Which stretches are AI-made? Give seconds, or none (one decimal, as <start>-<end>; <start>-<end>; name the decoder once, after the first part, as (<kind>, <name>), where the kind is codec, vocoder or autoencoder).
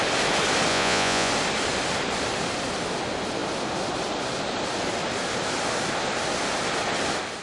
0.7-1.3 (vocoder, Vocos)